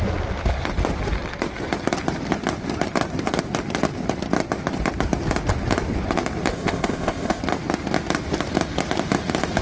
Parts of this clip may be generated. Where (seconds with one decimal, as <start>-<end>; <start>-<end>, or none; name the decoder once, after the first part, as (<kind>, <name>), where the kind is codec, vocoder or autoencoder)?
6.5-7.4 (codec, ZipCodec)